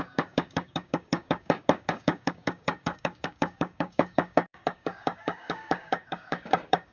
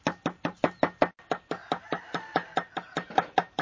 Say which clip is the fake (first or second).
first